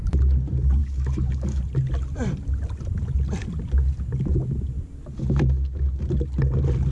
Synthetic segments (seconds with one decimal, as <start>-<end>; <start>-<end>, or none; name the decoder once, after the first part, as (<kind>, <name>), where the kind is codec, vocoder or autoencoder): 0.8-1.6 (codec, DAC)